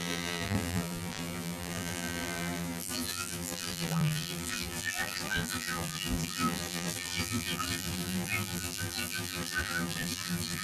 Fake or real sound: fake